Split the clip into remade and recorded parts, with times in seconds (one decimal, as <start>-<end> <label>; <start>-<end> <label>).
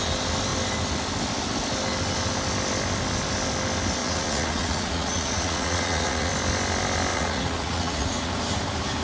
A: 0.0-4.0 recorded; 4.0-6.3 remade; 6.3-7.1 recorded; 7.1-8.3 remade; 8.3-9.0 recorded